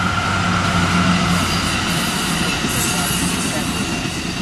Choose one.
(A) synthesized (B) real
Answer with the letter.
B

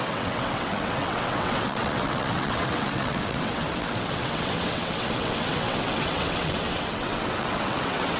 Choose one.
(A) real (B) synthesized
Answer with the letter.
B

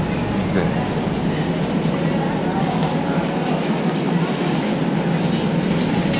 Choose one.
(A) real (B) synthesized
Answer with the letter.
A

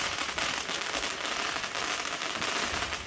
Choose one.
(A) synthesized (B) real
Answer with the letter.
B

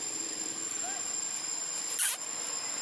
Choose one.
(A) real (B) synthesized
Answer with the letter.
A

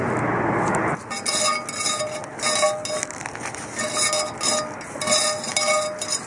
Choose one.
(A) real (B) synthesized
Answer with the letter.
A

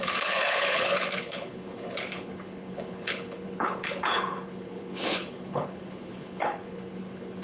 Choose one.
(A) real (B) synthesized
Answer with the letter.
B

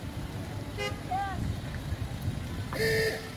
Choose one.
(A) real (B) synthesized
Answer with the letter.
A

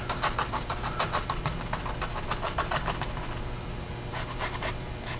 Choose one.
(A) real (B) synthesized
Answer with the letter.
A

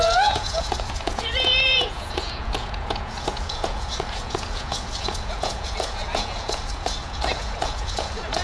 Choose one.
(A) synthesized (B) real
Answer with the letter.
A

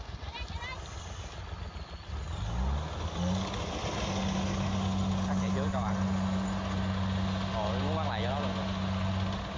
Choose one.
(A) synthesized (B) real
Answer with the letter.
B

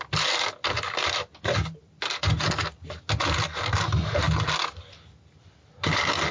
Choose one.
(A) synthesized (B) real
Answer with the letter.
B